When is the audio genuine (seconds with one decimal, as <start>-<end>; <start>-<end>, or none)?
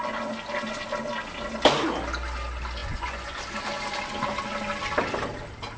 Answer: 0.0-2.8; 3.4-5.8